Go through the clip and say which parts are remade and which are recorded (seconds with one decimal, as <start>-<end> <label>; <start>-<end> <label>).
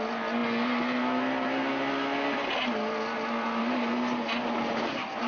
0.0-5.3 recorded